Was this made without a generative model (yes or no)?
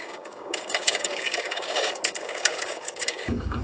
no